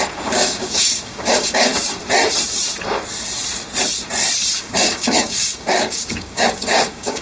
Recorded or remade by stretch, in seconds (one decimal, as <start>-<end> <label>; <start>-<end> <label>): 0.0-1.7 remade; 1.7-4.6 recorded; 4.6-7.2 remade

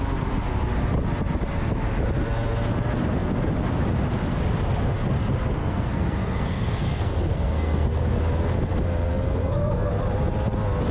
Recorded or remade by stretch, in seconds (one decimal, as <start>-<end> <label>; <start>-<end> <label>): 0.0-5.6 recorded; 5.6-8.2 remade; 8.2-9.1 recorded; 9.1-9.9 remade; 9.9-10.9 recorded

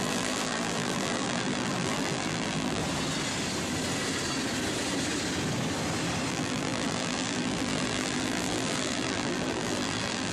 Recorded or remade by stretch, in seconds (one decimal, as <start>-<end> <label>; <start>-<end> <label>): 0.0-2.8 remade; 2.8-6.3 recorded; 6.3-10.3 remade

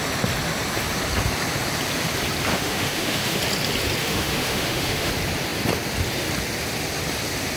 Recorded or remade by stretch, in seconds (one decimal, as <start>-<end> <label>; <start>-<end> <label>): 0.0-2.5 recorded; 2.5-3.4 remade; 3.4-4.0 recorded; 4.0-5.1 remade; 5.1-7.6 recorded

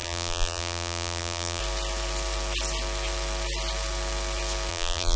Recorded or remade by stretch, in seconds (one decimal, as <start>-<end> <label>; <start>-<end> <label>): 0.0-1.6 remade; 1.6-4.7 recorded; 4.7-5.2 remade

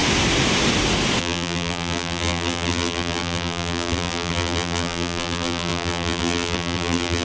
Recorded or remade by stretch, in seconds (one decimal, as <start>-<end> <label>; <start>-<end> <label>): 0.0-1.2 recorded; 1.2-7.2 remade

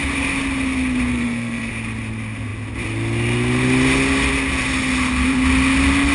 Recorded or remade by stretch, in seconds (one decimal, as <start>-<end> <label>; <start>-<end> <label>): 0.0-1.1 recorded; 1.1-1.7 remade; 1.7-6.1 recorded